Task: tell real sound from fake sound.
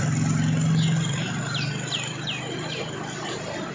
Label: real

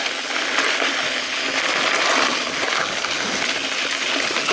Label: real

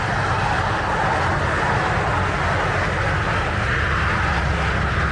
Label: real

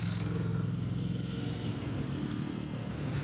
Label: fake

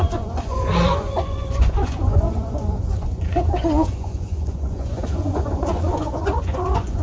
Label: fake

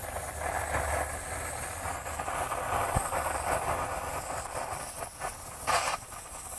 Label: real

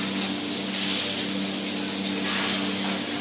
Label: real